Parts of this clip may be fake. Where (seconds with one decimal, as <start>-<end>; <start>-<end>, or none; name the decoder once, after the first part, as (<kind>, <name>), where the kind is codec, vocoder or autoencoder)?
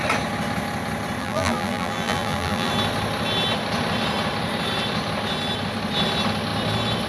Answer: 1.2-2.7 (vocoder, BigVGAN v2)